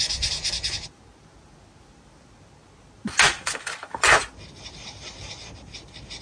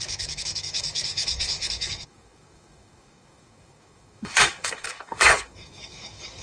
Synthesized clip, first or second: second